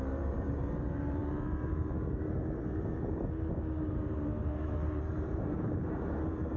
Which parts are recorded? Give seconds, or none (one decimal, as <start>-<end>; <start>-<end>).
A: none